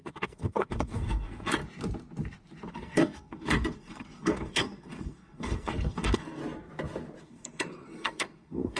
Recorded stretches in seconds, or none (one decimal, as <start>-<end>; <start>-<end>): 1.6-2.7; 6.4-7.2